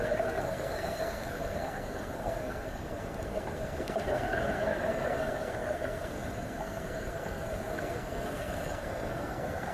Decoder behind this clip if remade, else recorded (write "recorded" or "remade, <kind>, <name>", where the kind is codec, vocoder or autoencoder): remade, codec, SNAC